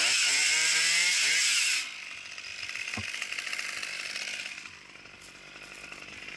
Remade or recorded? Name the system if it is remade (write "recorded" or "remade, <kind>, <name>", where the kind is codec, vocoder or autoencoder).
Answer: recorded